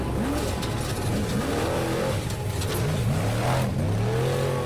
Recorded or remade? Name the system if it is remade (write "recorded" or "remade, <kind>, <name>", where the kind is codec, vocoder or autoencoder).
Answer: recorded